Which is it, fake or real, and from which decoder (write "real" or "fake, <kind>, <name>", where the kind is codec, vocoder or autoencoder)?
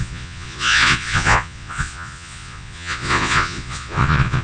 fake, vocoder, Vocos